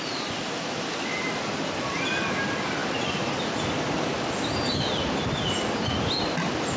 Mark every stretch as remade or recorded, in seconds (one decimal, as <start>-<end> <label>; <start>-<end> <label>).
0.0-6.8 recorded

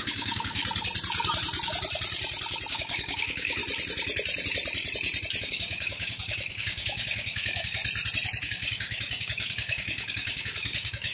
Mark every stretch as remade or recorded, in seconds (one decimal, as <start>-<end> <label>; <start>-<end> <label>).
0.0-0.6 remade; 0.6-2.7 recorded; 2.7-3.6 remade; 3.6-5.4 recorded; 5.4-7.8 remade; 7.8-8.4 recorded; 8.4-11.1 remade

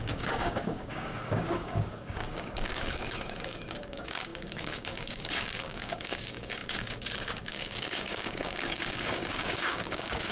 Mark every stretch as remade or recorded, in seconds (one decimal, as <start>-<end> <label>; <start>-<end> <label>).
0.0-10.3 remade

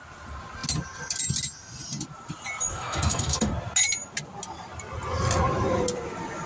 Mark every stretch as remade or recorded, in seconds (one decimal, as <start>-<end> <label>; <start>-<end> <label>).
0.0-2.7 recorded; 2.7-3.5 remade; 3.5-6.5 recorded

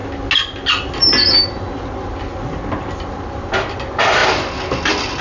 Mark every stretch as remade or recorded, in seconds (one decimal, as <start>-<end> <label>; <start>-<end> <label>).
0.0-5.2 recorded

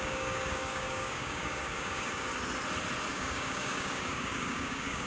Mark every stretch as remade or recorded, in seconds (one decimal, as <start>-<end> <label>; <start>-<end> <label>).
0.0-2.3 remade; 2.3-3.1 recorded; 3.1-5.1 remade

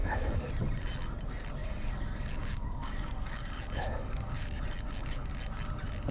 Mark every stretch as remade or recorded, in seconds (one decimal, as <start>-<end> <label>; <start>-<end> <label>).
0.0-0.5 remade; 0.5-1.6 recorded; 1.6-5.3 remade; 5.3-6.1 recorded